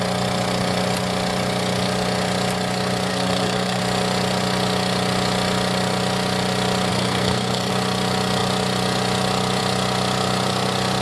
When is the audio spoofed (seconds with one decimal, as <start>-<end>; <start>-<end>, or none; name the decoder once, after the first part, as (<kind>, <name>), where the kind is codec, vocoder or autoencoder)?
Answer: 3.1-3.8 (codec, SNAC); 6.9-7.7